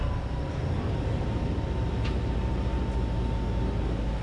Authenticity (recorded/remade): recorded